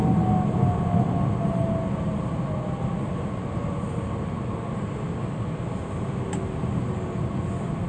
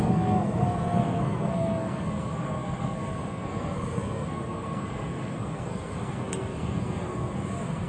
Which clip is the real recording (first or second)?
first